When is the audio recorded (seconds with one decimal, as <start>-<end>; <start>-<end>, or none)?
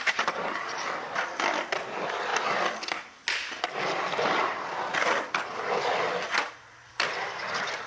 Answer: 2.3-7.0